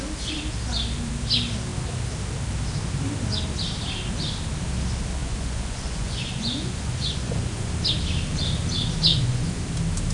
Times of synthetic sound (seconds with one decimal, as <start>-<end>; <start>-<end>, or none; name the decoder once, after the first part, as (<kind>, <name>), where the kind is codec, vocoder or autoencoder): 5.2-7.7 (vocoder, Vocos); 9.1-9.6